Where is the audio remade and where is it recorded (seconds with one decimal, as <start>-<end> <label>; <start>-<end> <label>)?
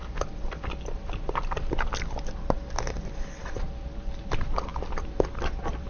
0.0-3.5 recorded; 3.5-4.7 remade; 4.7-5.3 recorded; 5.3-5.9 remade